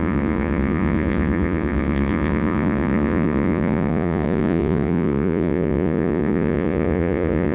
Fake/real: fake